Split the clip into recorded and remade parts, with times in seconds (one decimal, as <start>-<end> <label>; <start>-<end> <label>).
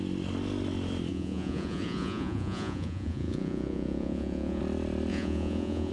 0.0-1.1 recorded; 1.1-4.6 remade; 4.6-5.1 recorded; 5.1-5.9 remade